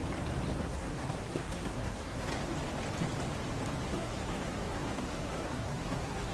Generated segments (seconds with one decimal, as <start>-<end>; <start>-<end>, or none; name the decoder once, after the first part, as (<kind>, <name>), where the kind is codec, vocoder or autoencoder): 0.6-2.3 (codec, SNAC); 3.9-6.3